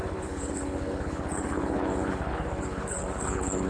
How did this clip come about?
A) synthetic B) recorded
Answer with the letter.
A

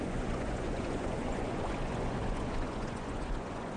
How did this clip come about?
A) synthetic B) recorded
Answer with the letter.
A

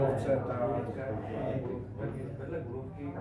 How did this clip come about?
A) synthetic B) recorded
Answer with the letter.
B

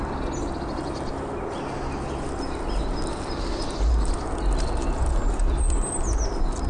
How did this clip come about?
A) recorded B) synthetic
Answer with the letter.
A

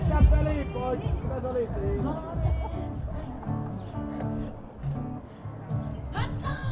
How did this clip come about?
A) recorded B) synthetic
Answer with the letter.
A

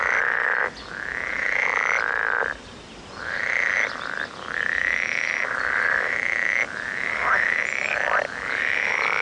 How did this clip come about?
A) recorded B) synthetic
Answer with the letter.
A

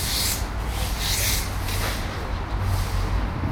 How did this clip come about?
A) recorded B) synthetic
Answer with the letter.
A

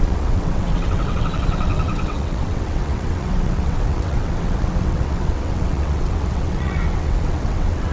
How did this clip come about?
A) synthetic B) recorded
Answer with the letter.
A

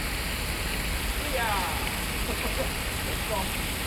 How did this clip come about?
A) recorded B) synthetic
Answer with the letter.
A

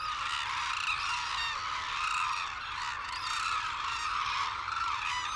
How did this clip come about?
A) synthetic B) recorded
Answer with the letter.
B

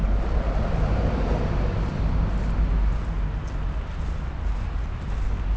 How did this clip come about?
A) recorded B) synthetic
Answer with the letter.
A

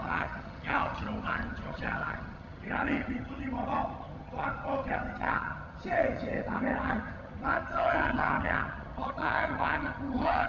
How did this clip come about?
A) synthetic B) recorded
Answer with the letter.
A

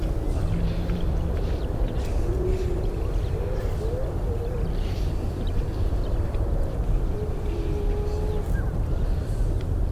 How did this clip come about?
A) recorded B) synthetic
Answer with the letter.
A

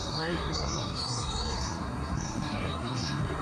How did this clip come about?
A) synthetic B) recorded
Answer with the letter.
A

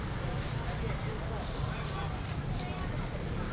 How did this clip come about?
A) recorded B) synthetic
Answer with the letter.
A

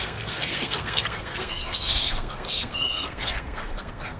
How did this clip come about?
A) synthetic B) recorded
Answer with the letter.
A